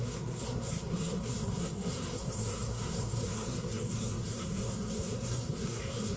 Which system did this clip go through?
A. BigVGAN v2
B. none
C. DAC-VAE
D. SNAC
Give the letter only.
D